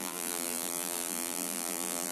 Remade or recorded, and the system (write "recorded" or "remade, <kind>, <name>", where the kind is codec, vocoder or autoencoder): remade, vocoder, BigVGAN v2